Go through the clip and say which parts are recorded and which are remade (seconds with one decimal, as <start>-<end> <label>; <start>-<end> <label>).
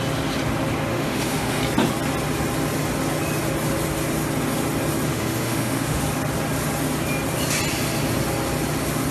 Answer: 0.0-0.9 recorded; 0.9-1.6 remade; 1.6-5.1 recorded; 5.1-6.0 remade; 6.0-9.1 recorded